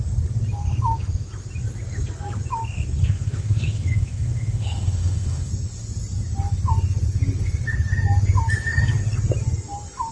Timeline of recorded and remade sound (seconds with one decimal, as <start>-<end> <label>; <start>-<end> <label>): 0.0-3.0 recorded; 3.0-5.5 remade; 5.5-10.1 recorded